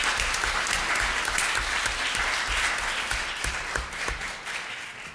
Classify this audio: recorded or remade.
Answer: recorded